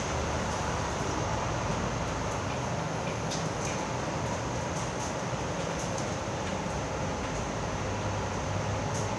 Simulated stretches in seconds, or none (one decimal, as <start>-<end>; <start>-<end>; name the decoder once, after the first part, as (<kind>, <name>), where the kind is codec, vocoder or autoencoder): 0.0-1.7 (vocoder, BigVGAN v2); 5.3-6.5